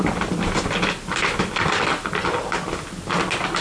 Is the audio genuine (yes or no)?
yes